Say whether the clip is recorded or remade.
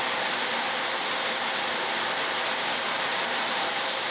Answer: remade